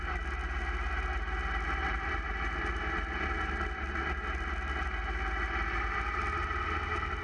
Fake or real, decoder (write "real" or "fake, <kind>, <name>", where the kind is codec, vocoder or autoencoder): real